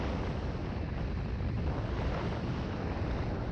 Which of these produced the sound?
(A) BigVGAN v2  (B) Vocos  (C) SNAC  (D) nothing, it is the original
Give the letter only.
D